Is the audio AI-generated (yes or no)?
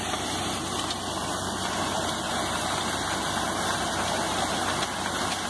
no